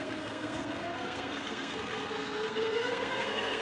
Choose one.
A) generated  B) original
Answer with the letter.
A